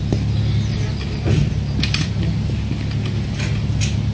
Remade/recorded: recorded